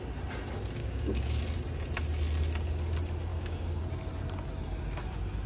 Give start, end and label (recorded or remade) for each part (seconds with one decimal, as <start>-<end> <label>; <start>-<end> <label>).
0.0-0.8 recorded; 0.8-1.4 remade; 1.4-3.3 recorded; 3.3-3.8 remade; 3.8-5.5 recorded